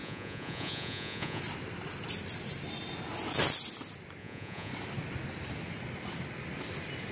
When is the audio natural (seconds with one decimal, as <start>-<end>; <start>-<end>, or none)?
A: 1.4-4.2; 4.7-7.1